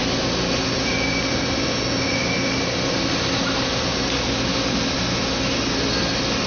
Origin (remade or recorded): recorded